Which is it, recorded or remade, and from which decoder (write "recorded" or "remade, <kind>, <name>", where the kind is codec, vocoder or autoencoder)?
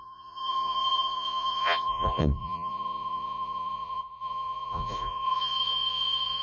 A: remade, vocoder, Vocos